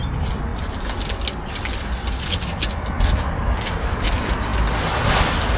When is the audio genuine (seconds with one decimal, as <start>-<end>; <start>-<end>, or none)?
0.0-5.6